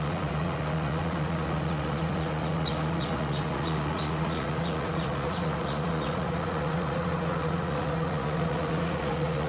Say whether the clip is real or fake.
fake